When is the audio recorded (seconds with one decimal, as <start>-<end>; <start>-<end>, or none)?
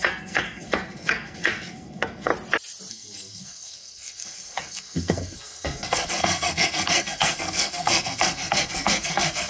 2.3-2.9